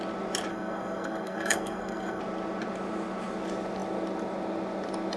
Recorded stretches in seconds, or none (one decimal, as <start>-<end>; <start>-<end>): 0.0-0.5; 2.2-5.2

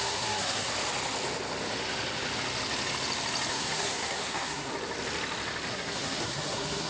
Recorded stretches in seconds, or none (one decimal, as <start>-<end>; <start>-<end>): 0.7-3.5; 4.7-5.7